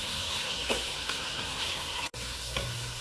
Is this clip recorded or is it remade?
remade